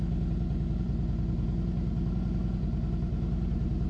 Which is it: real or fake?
real